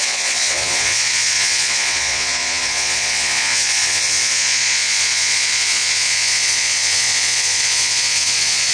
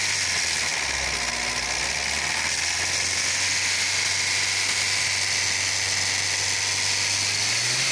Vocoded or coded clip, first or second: first